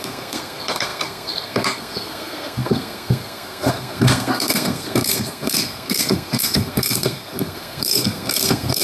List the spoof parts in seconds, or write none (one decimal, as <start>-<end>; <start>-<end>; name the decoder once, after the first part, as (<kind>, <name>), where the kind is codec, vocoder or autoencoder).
0.0-8.8 (codec, SNAC)